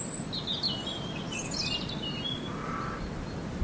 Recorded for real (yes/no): yes